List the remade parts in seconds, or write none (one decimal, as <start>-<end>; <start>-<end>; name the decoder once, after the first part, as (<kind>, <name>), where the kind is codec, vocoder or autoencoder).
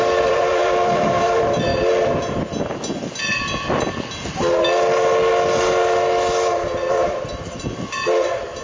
0.0-1.7 (vocoder, BigVGAN v2); 6.9-8.6